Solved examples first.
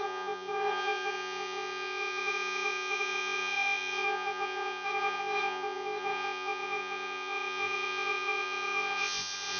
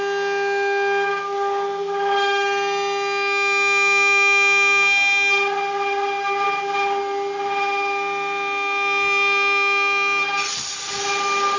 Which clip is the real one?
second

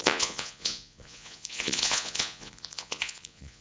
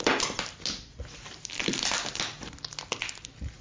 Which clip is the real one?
second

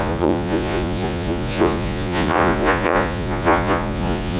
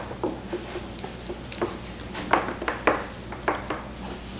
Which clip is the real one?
second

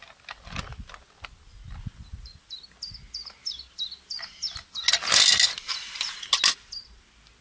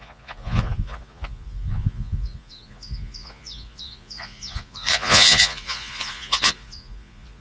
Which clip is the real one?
first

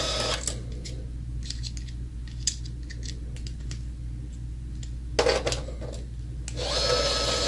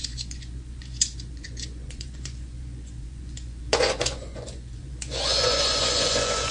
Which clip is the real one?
first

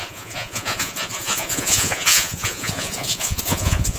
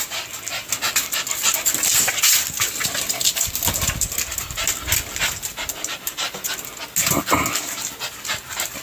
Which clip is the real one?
second